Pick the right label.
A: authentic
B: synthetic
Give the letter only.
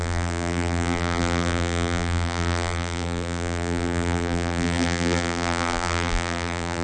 B